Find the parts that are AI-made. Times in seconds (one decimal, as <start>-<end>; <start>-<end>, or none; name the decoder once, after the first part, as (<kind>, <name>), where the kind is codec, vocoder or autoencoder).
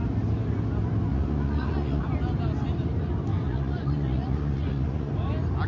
1.1-2.0 (vocoder, Vocos); 3.3-5.1